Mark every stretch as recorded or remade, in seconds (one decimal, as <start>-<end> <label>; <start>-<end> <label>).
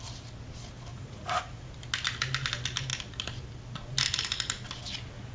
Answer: 0.0-0.9 recorded; 0.9-1.7 remade; 1.7-5.3 recorded